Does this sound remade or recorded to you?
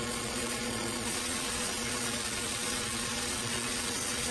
remade